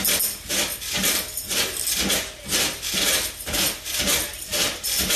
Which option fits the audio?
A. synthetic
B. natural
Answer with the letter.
B